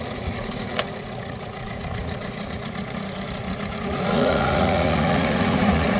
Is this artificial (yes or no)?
yes